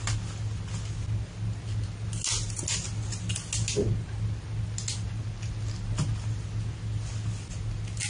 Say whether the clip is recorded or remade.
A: recorded